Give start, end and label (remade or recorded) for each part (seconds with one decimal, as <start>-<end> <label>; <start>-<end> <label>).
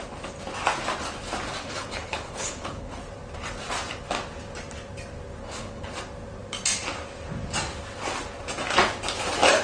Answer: 0.0-1.6 recorded; 1.6-3.0 remade; 3.0-5.4 recorded; 5.4-5.9 remade; 5.9-9.6 recorded